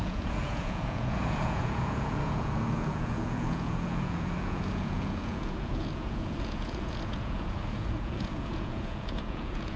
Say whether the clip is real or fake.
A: fake